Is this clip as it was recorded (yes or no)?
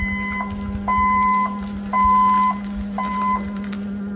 yes